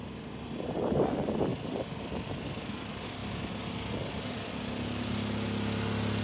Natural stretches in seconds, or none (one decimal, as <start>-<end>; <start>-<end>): 0.0-6.2